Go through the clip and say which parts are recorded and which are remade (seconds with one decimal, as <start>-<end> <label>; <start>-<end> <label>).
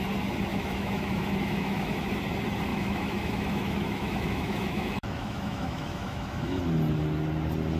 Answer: 0.0-0.5 recorded; 0.5-2.1 remade; 2.1-2.7 recorded; 2.7-6.6 remade; 6.6-7.8 recorded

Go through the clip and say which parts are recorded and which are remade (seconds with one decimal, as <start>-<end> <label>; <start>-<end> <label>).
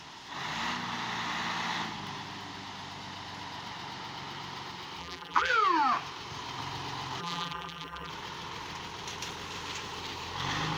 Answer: 0.0-5.0 recorded; 5.0-5.5 remade; 5.5-7.2 recorded; 7.2-8.1 remade; 8.1-10.8 recorded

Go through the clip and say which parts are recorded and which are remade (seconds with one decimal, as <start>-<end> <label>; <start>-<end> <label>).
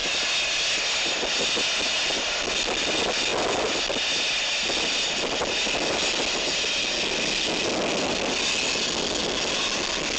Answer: 0.0-10.2 recorded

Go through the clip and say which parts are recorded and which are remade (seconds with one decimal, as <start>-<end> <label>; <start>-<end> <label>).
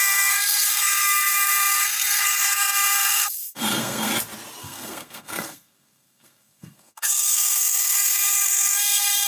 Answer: 0.0-4.1 remade; 4.1-4.6 recorded; 4.6-9.3 remade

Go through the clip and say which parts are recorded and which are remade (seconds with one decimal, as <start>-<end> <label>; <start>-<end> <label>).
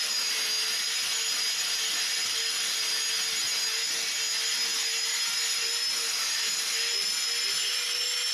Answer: 0.0-8.3 recorded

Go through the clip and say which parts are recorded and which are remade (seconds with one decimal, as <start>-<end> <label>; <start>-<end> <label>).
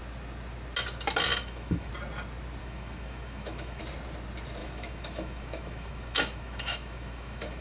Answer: 0.0-1.3 recorded; 1.3-1.9 remade; 1.9-2.6 recorded; 2.6-3.8 remade; 3.8-4.6 recorded; 4.6-7.6 remade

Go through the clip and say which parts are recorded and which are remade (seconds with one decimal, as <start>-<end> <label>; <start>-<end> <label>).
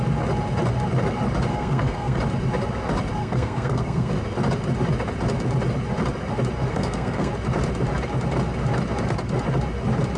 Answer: 0.0-1.5 recorded; 1.5-2.2 remade; 2.2-3.2 recorded; 3.2-4.1 remade; 4.1-6.7 recorded; 6.7-7.3 remade; 7.3-10.2 recorded